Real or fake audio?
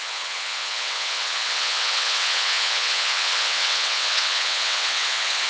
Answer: fake